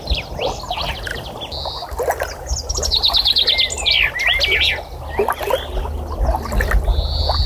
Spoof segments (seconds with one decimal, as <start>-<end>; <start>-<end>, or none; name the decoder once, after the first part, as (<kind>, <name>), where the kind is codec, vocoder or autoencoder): none

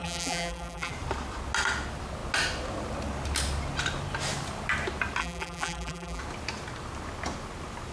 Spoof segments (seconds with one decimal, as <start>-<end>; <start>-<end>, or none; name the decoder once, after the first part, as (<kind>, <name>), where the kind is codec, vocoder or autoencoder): 0.0-0.9 (vocoder, BigVGAN v2); 5.2-6.2